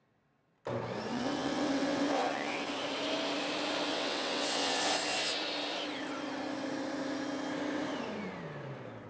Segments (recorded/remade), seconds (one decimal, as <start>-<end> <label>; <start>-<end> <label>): 0.0-1.1 recorded; 1.1-2.7 remade; 2.7-3.9 recorded; 3.9-4.8 remade; 4.8-9.1 recorded